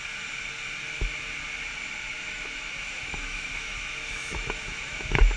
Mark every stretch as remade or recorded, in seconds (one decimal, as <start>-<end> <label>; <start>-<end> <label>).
0.0-2.1 recorded; 2.1-5.4 remade